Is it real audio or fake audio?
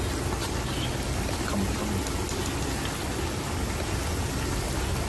real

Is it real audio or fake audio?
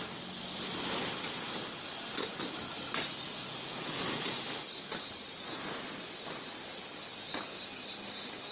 real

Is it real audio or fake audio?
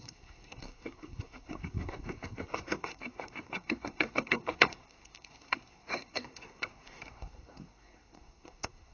fake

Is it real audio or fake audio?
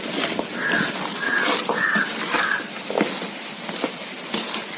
real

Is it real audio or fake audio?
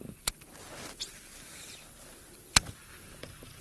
real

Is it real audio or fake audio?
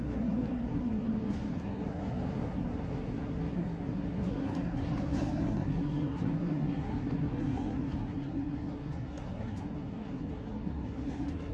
fake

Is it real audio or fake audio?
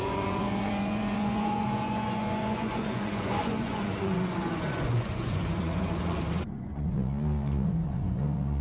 fake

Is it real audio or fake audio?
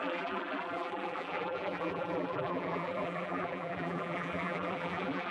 fake